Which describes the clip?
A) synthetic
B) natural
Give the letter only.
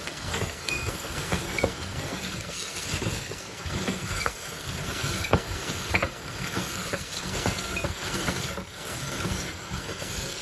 A